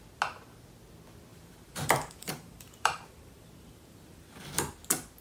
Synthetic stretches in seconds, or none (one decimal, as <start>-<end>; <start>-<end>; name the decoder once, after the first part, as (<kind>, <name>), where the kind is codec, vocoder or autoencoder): 1.3-4.4 (vocoder, BigVGAN v2)